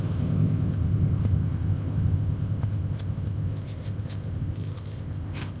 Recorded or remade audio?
remade